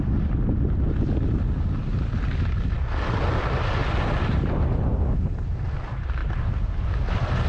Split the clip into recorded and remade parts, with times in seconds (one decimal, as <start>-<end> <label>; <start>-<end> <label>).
0.0-3.8 recorded; 3.8-4.5 remade; 4.5-7.5 recorded